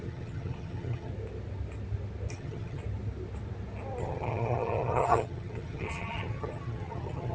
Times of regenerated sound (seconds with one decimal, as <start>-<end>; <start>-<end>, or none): 0.0-1.1; 2.3-2.8; 4.0-7.3